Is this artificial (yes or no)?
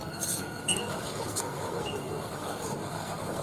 yes